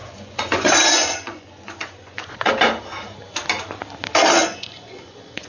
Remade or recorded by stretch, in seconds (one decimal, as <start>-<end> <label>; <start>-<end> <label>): 0.0-2.5 remade; 2.5-4.4 recorded; 4.4-5.5 remade